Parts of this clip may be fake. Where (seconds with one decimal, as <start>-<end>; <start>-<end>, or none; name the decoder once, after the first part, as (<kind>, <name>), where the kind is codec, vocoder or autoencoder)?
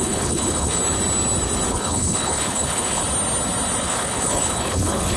0.0-0.8 (codec, HILCodec); 1.7-3.0; 3.8-5.2